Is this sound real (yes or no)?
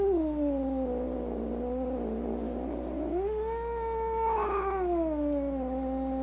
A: yes